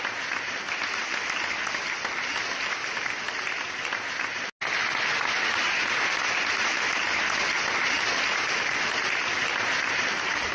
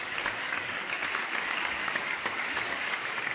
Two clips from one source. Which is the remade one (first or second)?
second